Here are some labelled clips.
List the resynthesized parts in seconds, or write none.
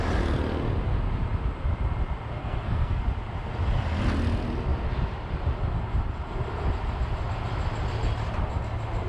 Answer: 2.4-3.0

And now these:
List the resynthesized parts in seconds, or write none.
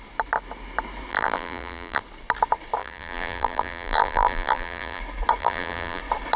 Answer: 1.1-2.0; 2.8-5.0; 5.4-6.0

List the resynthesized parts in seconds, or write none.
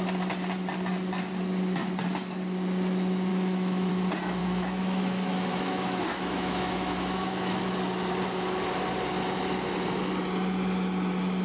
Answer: 3.3-3.9; 4.4-7.6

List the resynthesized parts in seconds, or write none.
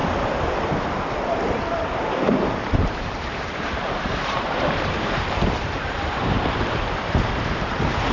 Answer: 2.3-8.1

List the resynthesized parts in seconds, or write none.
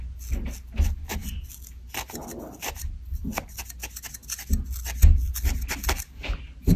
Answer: none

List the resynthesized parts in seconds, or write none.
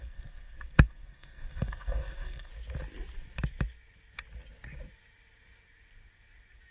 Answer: 0.0-2.5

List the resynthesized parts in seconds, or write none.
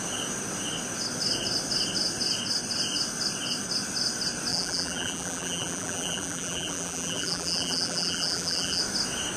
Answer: 4.5-8.8